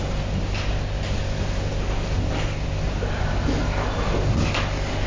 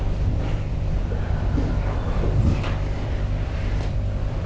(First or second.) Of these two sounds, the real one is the first